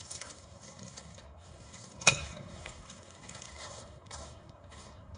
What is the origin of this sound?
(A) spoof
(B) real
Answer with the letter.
A